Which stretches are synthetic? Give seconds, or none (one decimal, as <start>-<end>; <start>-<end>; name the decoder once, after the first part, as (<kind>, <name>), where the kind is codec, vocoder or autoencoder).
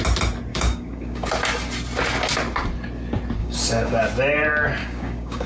0.5-1.3 (codec, DAC); 3.4-4.0; 4.8-5.5